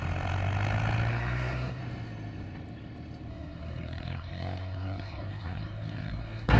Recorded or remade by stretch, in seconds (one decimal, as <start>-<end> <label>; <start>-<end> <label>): 0.0-1.1 recorded; 1.1-1.8 remade; 1.8-3.3 recorded; 3.3-6.6 remade

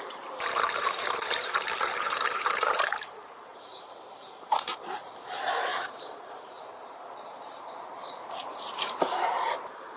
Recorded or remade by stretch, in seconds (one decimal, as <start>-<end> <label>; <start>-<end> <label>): 0.0-10.0 remade

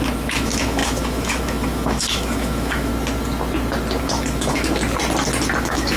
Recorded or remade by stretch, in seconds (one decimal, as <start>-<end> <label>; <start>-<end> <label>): 0.0-2.9 remade; 2.9-4.0 recorded; 4.0-4.8 remade; 4.8-5.6 recorded; 5.6-6.0 remade

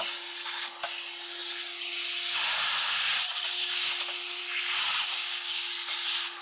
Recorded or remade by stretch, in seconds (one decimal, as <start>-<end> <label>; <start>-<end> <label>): 0.0-5.2 recorded; 5.2-5.7 remade; 5.7-6.4 recorded

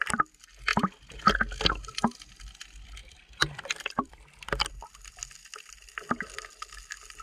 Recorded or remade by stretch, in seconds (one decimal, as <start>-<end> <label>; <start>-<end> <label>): 0.0-3.0 recorded; 3.0-4.1 remade; 4.1-7.2 recorded